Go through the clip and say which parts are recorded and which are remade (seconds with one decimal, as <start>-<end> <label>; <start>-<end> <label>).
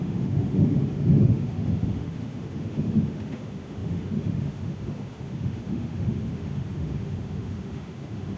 0.0-8.4 remade